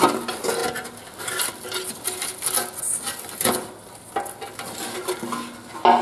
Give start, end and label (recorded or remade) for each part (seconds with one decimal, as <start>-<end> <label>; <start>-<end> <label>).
0.0-6.0 recorded